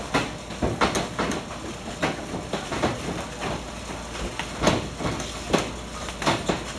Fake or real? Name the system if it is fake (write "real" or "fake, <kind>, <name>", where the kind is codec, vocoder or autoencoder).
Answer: real